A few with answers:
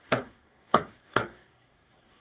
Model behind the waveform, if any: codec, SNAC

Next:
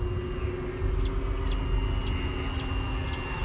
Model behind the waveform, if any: none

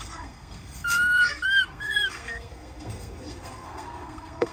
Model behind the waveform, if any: codec, SNAC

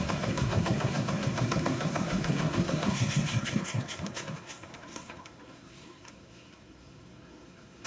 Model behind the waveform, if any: codec, SNAC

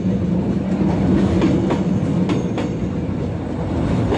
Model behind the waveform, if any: none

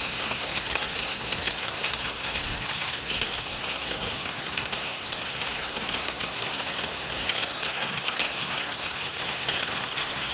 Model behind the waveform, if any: codec, SNAC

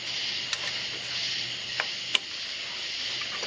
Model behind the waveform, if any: none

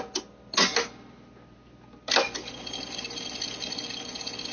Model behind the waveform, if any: none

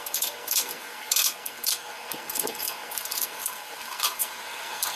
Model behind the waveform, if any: codec, SNAC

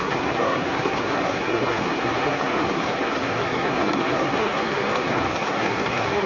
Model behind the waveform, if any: codec, SNAC